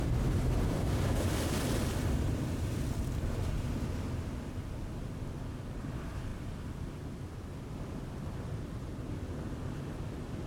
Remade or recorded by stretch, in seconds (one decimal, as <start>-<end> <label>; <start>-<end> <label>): 0.0-10.5 recorded